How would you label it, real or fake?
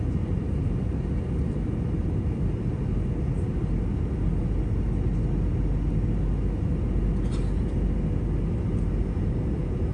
real